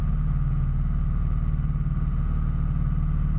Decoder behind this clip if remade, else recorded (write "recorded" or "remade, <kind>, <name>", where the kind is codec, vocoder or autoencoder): recorded